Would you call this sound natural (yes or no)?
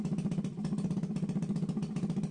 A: yes